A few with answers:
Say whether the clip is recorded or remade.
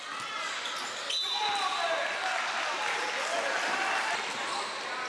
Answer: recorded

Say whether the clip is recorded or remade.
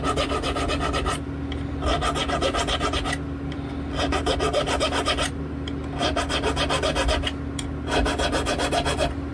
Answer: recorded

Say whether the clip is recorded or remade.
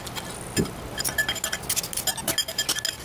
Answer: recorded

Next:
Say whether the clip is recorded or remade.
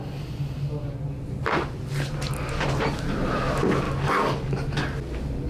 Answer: recorded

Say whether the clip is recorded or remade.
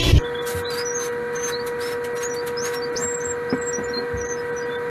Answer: recorded